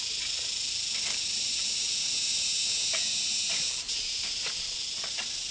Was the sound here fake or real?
real